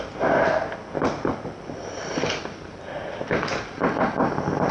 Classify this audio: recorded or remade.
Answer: recorded